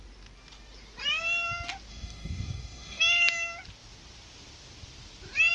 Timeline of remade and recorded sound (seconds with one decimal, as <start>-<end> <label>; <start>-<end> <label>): 0.0-1.9 recorded; 1.9-3.0 remade; 3.0-5.5 recorded